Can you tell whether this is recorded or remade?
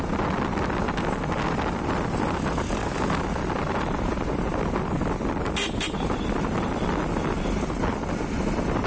recorded